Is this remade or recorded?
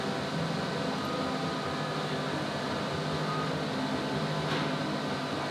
recorded